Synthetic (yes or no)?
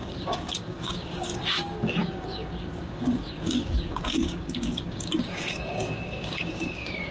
yes